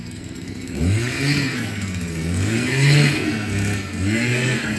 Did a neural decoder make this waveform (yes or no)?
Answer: yes